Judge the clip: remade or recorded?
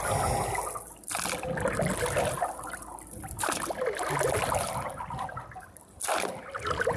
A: recorded